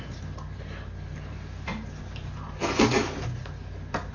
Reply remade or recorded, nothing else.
recorded